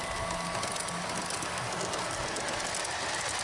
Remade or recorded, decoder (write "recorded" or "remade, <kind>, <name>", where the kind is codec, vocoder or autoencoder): recorded